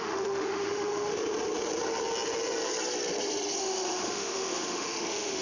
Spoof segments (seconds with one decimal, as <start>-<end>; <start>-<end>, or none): 0.0-1.1; 3.6-5.4